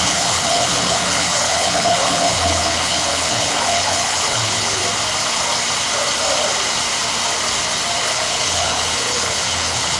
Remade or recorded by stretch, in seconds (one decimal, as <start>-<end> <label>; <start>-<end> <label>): 0.0-4.8 remade; 4.8-8.1 recorded; 8.1-10.0 remade

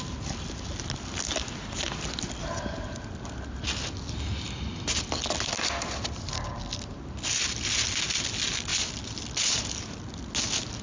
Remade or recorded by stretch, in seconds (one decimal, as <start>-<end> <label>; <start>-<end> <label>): 0.0-10.8 recorded

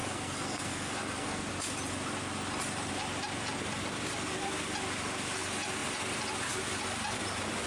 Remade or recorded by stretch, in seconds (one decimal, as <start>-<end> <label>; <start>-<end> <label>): 0.0-1.5 remade; 1.5-7.7 recorded

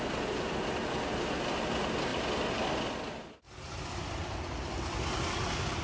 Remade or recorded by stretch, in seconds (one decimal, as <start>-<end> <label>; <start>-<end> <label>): 0.0-5.8 recorded